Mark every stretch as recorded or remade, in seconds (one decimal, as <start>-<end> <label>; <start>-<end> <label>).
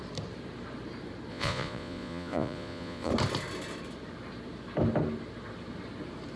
0.0-1.3 recorded; 1.3-3.1 remade; 3.1-6.4 recorded